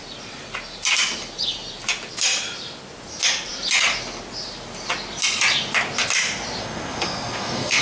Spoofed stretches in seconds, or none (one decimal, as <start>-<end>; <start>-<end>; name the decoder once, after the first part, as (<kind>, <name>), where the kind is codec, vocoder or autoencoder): 6.6-7.8 (codec, SNAC)